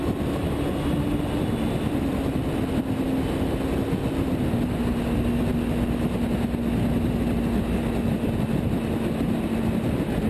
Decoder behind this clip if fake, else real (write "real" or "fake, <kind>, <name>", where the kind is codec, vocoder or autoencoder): real